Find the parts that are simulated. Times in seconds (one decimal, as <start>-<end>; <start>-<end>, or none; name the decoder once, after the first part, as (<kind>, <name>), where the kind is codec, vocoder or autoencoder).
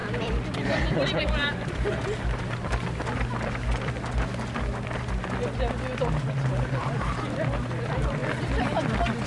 0.0-2.4 (vocoder, BigVGAN v2); 8.2-8.8